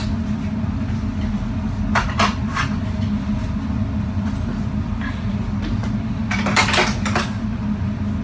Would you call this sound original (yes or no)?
yes